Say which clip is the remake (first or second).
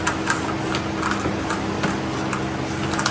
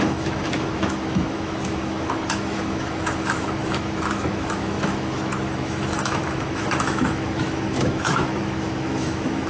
second